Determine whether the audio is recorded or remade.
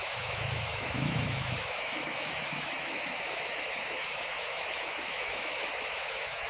remade